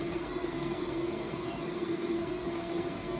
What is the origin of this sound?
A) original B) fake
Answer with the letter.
B